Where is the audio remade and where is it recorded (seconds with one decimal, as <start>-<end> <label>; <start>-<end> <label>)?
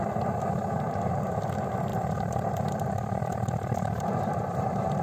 0.0-1.9 recorded; 1.9-5.0 remade